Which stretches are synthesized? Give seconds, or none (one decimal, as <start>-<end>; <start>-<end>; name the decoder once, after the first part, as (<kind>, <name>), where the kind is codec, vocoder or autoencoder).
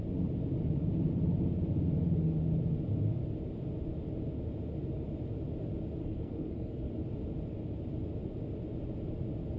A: 6.0-6.9 (codec, SNAC)